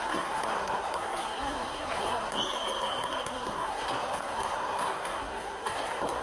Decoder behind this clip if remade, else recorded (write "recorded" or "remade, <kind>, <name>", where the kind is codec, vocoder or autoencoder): remade, codec, SNAC